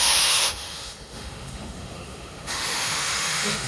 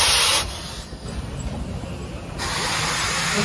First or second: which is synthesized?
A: first